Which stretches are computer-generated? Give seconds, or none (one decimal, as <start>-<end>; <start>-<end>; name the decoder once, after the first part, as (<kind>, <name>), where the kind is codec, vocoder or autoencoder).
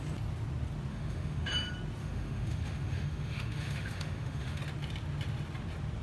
0.9-1.5 (autoencoder, DAC-VAE); 2.0-4.6